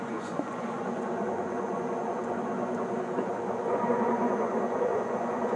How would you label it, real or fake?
fake